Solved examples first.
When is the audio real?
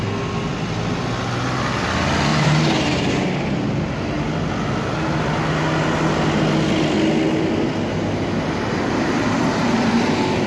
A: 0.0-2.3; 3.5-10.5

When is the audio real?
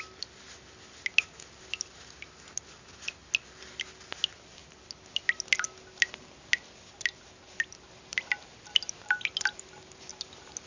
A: 0.0-8.1; 10.1-10.7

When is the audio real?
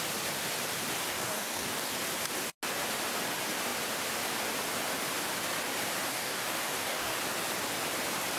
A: 0.0-1.1; 1.9-6.1; 7.2-8.4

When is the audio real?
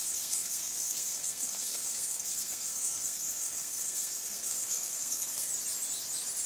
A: 5.5-6.5